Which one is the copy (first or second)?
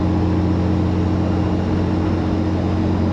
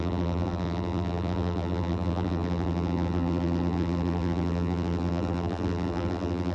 second